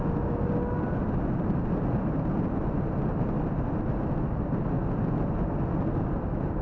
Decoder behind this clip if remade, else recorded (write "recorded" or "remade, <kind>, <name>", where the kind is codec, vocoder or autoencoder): recorded